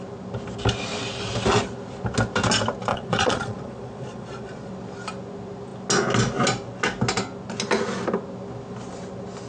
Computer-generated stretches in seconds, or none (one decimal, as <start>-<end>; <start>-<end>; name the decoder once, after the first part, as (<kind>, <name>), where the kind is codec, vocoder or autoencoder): 2.9-4.7 (vocoder, Vocos)